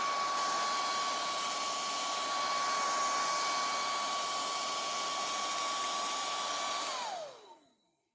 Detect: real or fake real